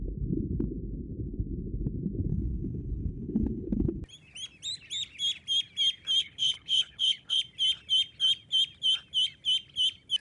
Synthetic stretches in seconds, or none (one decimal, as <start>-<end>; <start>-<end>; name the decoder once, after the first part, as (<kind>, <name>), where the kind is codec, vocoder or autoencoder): 2.3-4.0 (codec, HILCodec); 6.2-7.4